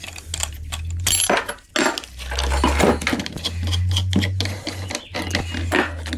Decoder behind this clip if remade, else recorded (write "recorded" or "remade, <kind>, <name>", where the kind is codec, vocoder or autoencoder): recorded